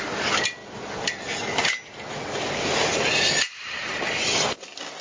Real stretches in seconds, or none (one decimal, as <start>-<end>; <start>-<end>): 0.0-5.0